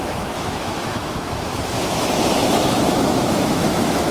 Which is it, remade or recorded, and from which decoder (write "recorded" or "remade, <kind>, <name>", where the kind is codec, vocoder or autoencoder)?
remade, autoencoder, DAC-VAE